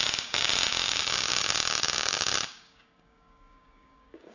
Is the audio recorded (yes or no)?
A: no